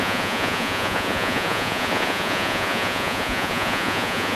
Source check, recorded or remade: remade